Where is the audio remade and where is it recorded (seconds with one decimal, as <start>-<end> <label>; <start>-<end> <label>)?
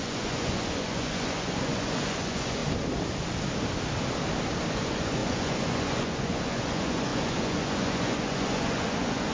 0.0-2.6 remade; 2.6-4.7 recorded; 4.7-9.3 remade